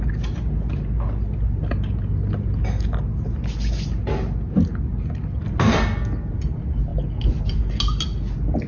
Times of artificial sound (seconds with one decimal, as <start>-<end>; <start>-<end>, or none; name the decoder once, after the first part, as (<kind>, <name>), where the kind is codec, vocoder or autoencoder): none